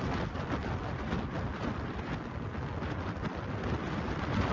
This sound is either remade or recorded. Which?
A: recorded